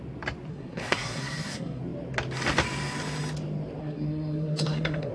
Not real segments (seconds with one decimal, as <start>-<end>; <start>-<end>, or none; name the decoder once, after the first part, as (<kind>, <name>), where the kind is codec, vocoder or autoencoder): 0.5-1.8 (codec, SNAC); 3.8-5.1